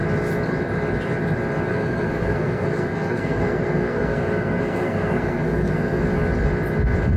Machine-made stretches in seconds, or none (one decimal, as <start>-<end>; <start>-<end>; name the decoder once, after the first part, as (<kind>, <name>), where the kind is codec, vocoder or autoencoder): 1.7-6.0 (codec, SNAC)